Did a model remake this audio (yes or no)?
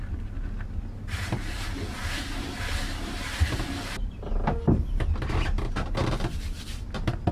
no